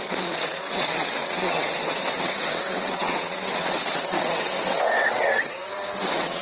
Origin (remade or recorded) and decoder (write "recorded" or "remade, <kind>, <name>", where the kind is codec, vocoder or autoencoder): remade, vocoder, WaveNeXt